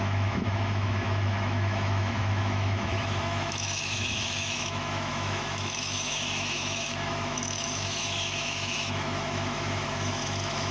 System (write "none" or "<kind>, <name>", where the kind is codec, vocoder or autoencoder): autoencoder, DAC-VAE